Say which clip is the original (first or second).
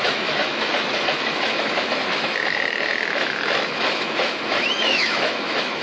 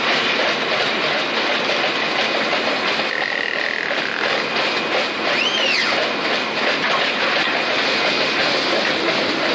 second